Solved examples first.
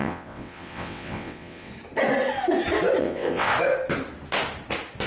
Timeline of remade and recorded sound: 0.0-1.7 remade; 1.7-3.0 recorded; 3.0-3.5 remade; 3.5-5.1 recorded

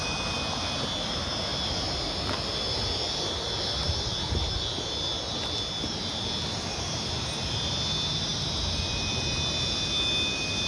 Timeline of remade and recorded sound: 0.0-10.7 recorded